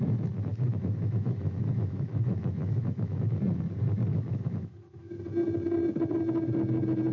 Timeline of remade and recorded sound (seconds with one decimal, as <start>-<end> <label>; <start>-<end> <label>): 0.0-0.5 recorded; 0.5-3.4 remade; 3.4-4.1 recorded; 4.1-5.2 remade; 5.2-7.1 recorded